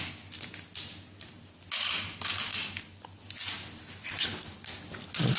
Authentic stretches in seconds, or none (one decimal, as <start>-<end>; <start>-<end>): 0.0-5.4